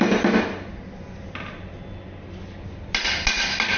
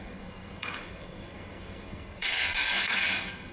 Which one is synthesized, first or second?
second